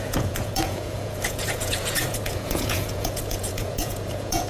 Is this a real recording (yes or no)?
no